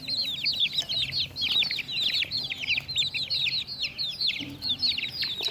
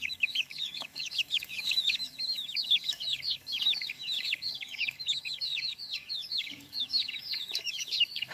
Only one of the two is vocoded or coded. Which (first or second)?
second